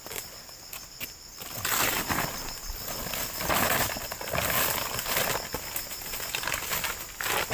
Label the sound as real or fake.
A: real